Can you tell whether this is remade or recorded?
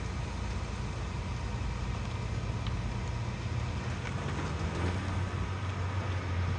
recorded